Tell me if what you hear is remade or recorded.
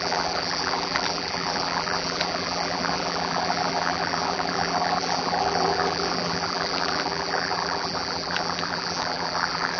remade